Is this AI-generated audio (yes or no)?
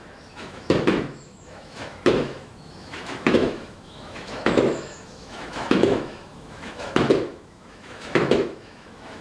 yes